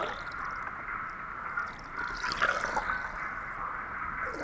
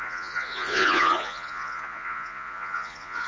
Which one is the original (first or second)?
first